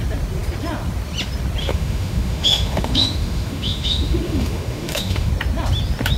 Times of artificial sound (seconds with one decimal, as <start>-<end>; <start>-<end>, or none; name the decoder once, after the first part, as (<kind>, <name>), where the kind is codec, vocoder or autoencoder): 1.6-5.3 (autoencoder, DAC-VAE)